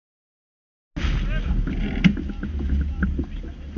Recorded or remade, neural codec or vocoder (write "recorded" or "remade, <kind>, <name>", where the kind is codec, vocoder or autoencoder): recorded